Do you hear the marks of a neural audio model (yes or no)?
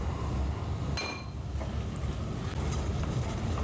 no